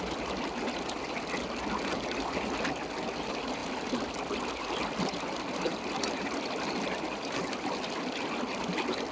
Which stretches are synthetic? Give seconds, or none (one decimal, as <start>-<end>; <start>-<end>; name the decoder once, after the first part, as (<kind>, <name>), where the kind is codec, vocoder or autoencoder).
none